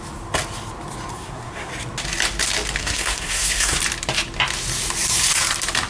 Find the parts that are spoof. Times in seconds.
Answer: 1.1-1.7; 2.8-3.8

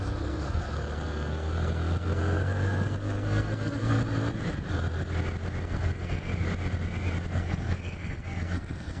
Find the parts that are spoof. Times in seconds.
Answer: 0.0-4.0; 5.6-6.3; 7.3-9.0

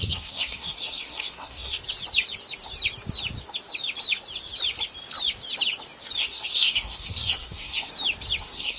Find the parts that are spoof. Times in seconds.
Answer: 0.0-1.8; 6.2-7.9; 8.4-8.8